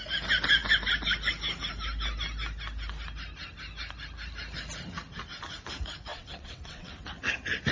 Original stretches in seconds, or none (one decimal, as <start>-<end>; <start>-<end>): 0.0-6.1; 6.9-7.7